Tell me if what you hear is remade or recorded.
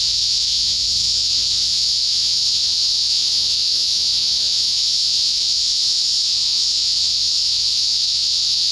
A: remade